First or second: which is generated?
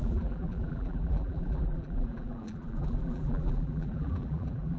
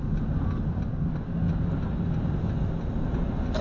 first